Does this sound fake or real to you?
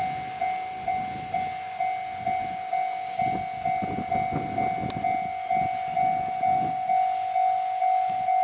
real